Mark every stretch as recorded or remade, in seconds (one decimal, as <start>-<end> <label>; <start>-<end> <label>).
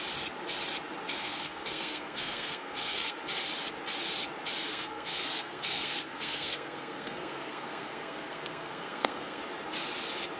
0.0-1.2 recorded; 1.2-3.2 remade; 3.2-4.7 recorded; 4.7-9.4 remade; 9.4-10.4 recorded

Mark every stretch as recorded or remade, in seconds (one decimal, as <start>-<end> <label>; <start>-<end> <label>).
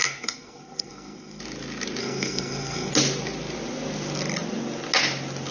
0.0-1.4 remade; 1.4-2.0 recorded; 2.0-2.9 remade; 2.9-5.5 recorded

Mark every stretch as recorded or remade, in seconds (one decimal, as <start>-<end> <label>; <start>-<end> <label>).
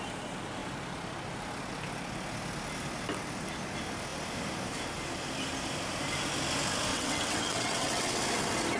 0.0-6.9 recorded; 6.9-8.2 remade; 8.2-8.8 recorded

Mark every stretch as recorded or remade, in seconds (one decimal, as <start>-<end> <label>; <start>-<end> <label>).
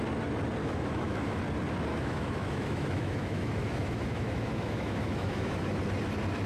0.0-0.6 recorded; 0.6-1.4 remade; 1.4-1.9 recorded; 1.9-5.8 remade; 5.8-6.5 recorded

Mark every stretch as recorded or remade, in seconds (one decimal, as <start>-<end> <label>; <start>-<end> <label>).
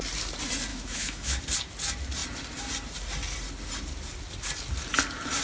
0.0-0.7 recorded; 0.7-1.4 remade; 1.4-5.4 recorded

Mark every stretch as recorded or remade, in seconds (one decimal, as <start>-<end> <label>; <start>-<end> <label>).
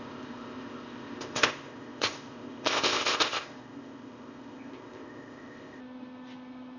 0.0-5.8 remade; 5.8-6.8 recorded